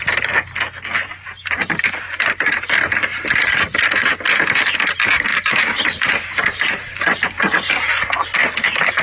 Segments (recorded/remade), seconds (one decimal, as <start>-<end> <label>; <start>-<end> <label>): 0.0-1.1 recorded; 1.1-3.2 remade; 3.2-5.3 recorded; 5.3-7.9 remade; 7.9-9.0 recorded